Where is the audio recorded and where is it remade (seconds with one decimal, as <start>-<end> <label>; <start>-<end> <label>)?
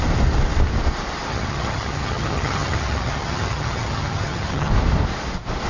0.0-1.3 recorded; 1.3-4.7 remade; 4.7-5.7 recorded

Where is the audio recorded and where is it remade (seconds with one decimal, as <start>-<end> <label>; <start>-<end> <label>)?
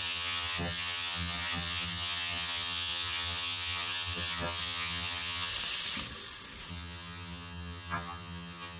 0.0-5.5 remade; 5.5-6.7 recorded; 6.7-8.8 remade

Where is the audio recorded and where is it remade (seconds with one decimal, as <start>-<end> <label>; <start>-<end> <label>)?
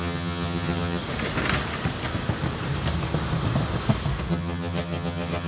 0.0-1.0 remade; 1.0-4.3 recorded; 4.3-5.5 remade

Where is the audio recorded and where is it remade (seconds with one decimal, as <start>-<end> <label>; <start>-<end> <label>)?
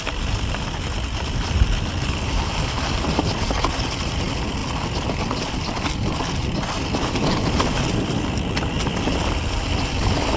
0.0-10.4 recorded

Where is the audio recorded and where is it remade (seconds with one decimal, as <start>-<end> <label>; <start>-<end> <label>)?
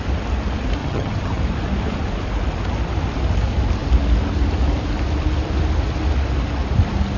0.0-0.8 recorded; 0.8-1.4 remade; 1.4-7.2 recorded